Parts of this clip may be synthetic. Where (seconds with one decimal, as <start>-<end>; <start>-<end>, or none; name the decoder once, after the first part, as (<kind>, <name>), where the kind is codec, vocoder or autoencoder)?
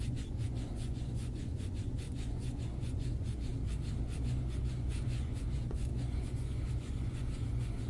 0.0-3.5 (vocoder, Vocos); 4.2-7.9